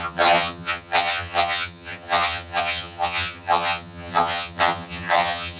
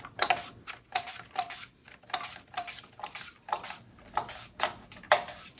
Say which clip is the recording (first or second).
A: second